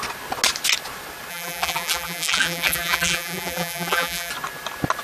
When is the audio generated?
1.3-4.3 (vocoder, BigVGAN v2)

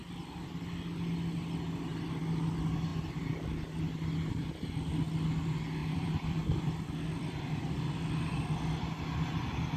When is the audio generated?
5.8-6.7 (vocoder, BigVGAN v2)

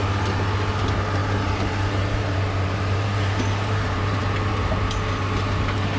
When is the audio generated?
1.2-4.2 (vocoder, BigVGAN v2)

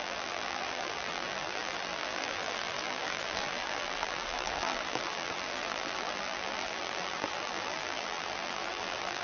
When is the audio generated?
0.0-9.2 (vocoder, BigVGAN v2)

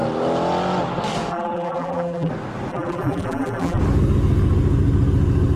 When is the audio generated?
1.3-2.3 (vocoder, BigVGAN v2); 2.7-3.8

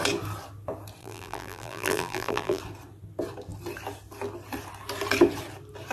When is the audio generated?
1.0-2.6 (vocoder, BigVGAN v2)